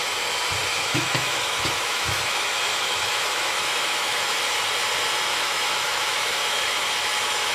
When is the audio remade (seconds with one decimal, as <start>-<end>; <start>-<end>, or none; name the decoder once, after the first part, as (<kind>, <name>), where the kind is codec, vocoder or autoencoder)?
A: 0.7-4.6 (autoencoder, DAC-VAE); 5.3-7.5